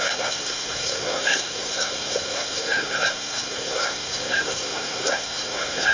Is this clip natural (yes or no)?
no